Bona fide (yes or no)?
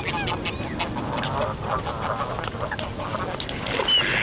yes